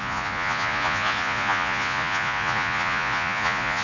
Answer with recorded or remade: remade